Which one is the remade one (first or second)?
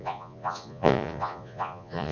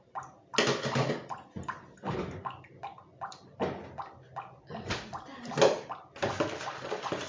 first